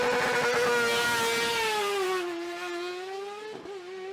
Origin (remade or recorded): recorded